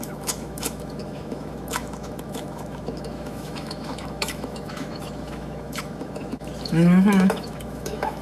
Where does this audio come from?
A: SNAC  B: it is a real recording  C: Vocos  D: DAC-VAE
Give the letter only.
D